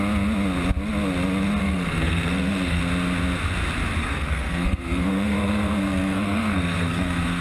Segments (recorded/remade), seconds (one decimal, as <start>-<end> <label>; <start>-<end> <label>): 0.0-1.6 recorded; 1.6-2.8 remade; 2.8-4.0 recorded; 4.0-7.4 remade